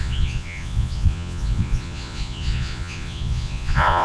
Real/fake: fake